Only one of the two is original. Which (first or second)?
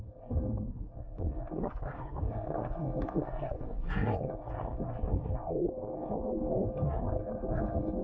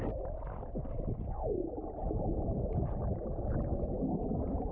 second